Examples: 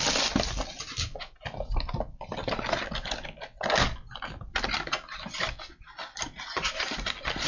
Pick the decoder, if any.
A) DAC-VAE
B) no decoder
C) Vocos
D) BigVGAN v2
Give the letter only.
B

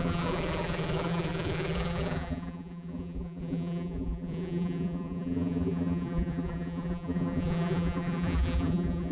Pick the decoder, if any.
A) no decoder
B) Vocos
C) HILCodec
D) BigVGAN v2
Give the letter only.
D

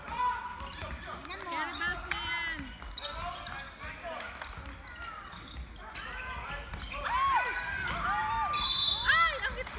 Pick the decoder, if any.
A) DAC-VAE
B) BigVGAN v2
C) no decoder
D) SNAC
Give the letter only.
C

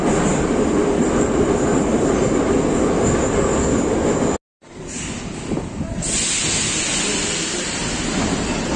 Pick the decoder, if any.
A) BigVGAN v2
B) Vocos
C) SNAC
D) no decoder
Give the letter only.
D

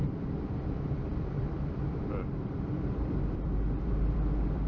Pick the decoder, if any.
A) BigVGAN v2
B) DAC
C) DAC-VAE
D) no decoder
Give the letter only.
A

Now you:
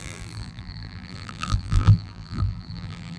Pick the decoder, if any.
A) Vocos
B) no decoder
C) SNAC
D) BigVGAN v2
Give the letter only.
D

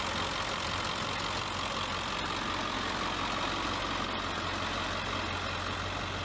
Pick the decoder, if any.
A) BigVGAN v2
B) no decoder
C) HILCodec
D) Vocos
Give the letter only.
B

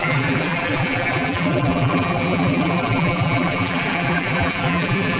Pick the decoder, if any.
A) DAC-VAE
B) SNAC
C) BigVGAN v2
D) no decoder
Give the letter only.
C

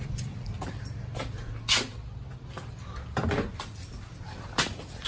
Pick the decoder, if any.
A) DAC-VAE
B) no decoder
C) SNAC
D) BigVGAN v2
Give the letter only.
B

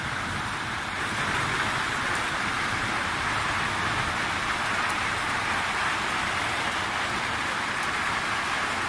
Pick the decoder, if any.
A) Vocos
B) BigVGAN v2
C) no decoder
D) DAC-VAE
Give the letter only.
B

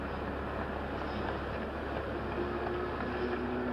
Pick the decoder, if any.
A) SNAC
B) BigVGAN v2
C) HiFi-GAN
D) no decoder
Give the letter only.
D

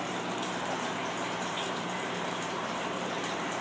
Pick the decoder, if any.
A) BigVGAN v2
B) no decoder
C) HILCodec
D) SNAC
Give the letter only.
A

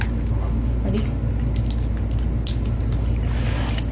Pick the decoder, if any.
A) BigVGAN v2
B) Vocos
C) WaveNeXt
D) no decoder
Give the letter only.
D